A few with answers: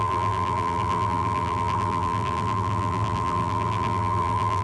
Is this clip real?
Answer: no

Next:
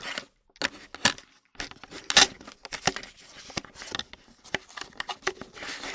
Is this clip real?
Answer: yes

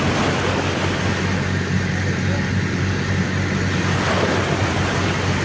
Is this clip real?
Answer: yes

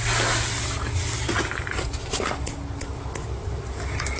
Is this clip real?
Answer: yes